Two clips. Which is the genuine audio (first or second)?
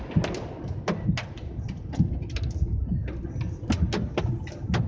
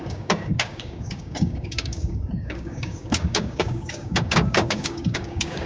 first